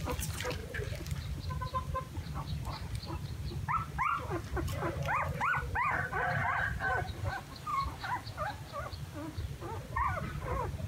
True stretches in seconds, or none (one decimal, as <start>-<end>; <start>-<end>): 0.0-0.6; 1.4-6.4; 7.3-7.7; 8.5-10.9